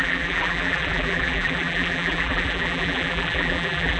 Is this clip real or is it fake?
fake